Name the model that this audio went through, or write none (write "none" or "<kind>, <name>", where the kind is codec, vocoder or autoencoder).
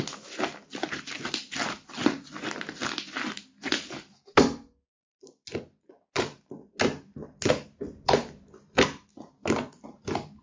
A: none